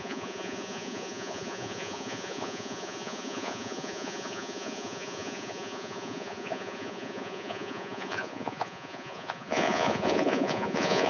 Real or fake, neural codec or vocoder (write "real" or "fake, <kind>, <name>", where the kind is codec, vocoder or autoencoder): fake, vocoder, Vocos